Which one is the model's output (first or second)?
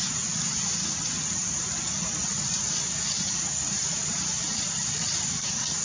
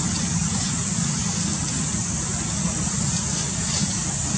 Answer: first